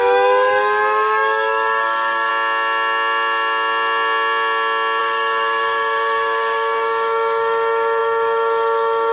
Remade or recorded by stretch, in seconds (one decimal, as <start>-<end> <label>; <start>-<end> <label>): 0.0-2.3 remade; 2.3-5.0 recorded; 5.0-9.1 remade